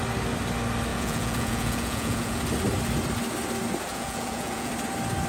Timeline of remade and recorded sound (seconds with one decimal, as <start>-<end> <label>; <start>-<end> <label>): 0.0-0.9 recorded; 0.9-2.4 remade; 2.4-3.9 recorded; 3.9-4.7 remade; 4.7-5.3 recorded